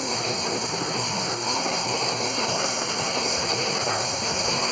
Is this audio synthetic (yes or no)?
yes